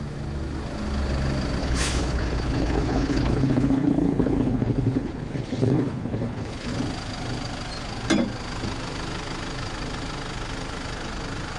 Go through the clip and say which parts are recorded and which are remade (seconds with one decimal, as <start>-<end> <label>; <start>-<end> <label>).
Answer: 0.0-1.6 recorded; 1.6-6.7 remade; 6.7-11.6 recorded